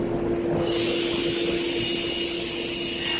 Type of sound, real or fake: real